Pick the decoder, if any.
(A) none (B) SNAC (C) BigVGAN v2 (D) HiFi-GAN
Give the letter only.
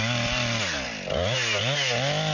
A